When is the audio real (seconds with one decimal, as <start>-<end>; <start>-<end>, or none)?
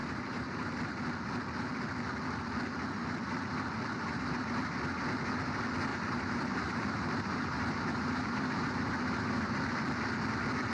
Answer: 0.7-5.9; 9.7-10.7